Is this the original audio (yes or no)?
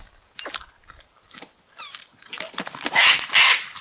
yes